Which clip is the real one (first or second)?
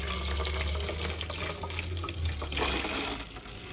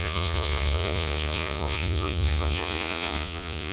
first